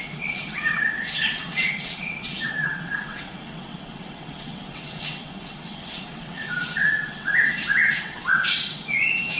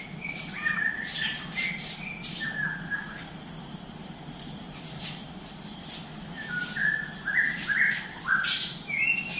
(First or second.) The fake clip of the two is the first